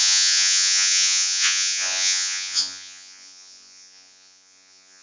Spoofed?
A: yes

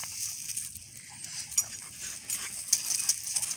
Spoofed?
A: no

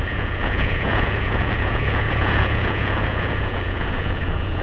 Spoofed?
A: yes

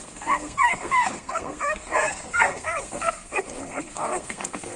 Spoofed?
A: yes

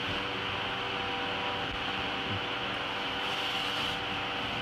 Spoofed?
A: no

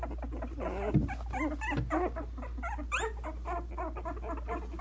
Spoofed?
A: no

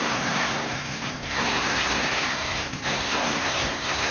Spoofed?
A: yes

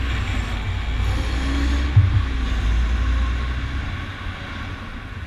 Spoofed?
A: no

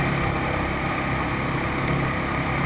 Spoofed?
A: no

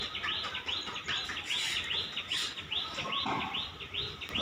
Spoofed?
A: no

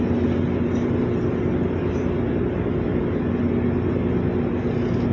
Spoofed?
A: no